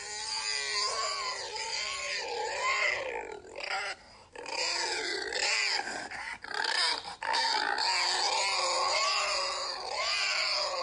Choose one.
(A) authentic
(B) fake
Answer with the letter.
A